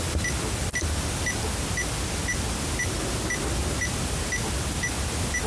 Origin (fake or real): real